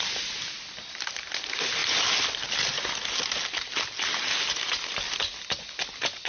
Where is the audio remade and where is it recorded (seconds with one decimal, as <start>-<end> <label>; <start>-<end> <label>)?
0.0-6.3 recorded